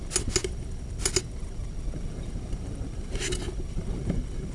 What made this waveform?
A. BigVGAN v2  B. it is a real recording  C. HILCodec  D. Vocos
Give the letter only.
B